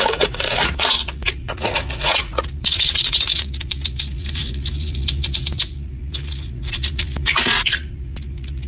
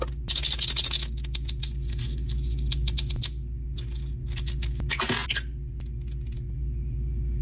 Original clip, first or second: second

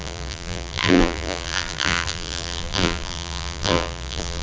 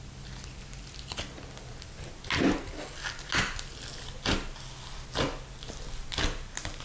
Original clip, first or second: second